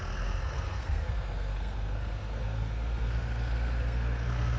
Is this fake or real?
fake